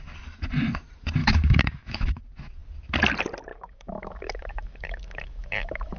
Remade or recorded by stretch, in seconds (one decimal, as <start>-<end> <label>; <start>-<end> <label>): 0.0-1.2 recorded; 1.2-2.2 remade; 2.2-3.5 recorded; 3.5-6.0 remade